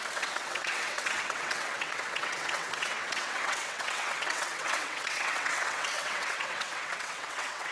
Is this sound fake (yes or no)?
yes